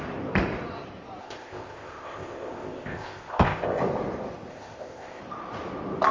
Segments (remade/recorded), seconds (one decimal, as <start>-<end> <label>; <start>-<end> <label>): 0.0-1.2 recorded; 1.2-3.8 remade; 3.8-4.5 recorded; 4.5-5.2 remade; 5.2-6.1 recorded